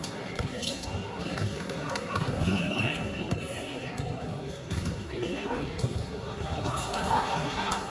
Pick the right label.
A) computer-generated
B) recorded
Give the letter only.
A